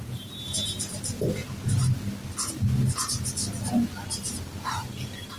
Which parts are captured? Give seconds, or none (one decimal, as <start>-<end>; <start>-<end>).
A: 1.4-4.6